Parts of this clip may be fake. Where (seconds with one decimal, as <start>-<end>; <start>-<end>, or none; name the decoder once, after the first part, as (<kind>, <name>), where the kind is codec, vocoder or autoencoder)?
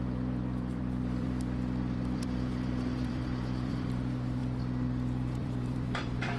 0.0-4.4 (vocoder, BigVGAN v2); 5.4-6.4